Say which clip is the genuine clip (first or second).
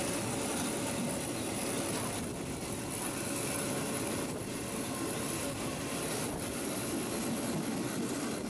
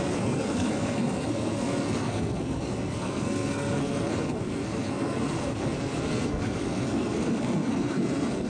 first